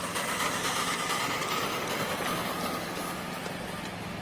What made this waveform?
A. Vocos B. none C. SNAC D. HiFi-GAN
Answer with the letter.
B